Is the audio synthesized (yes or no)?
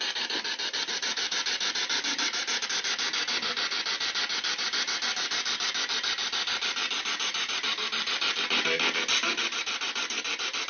yes